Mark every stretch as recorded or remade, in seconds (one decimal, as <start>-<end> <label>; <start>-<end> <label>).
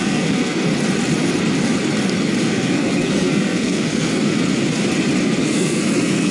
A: 0.0-0.7 remade; 0.7-2.4 recorded; 2.4-4.2 remade; 4.2-5.4 recorded; 5.4-6.3 remade